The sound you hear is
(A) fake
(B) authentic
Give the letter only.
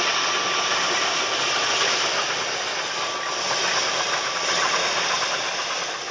B